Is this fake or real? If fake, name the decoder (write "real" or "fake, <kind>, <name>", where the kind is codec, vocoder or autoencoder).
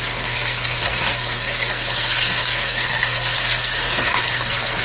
fake, codec, SNAC